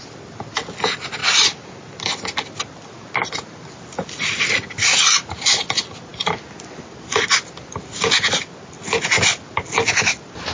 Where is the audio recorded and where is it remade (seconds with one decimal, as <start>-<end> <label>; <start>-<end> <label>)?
0.0-10.5 recorded

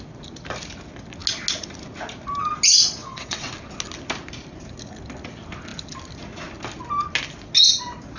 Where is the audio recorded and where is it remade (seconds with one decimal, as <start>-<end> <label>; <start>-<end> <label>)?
0.0-3.0 recorded; 3.0-3.5 remade; 3.5-8.2 recorded